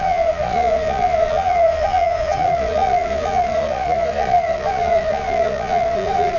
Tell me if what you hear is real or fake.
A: fake